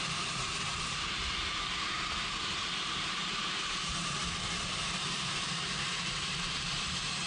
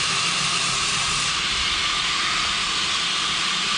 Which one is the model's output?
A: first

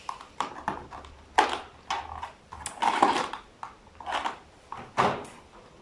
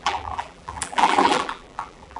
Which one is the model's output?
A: second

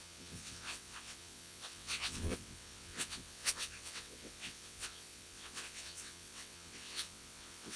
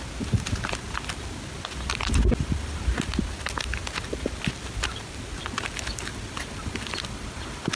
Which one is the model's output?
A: first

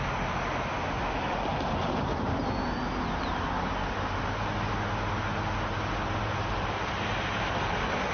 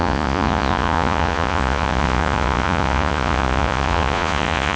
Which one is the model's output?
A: second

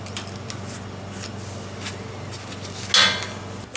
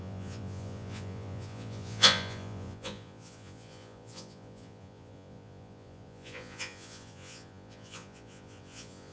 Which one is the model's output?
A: second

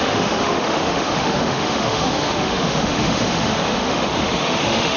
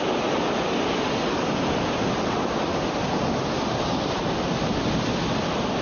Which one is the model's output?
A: first